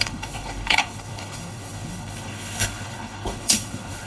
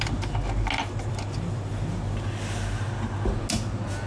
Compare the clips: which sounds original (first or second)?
second